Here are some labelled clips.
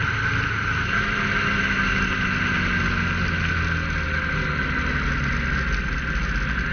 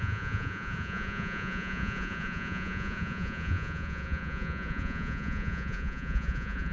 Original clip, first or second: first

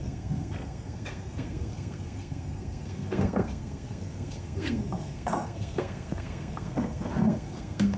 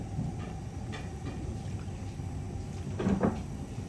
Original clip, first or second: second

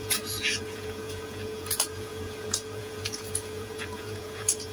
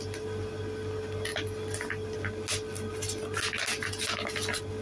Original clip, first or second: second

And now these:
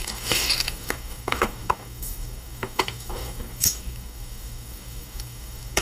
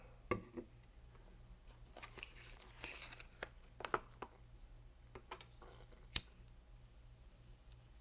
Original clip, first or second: second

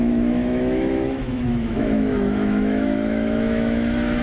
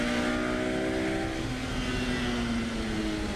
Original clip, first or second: second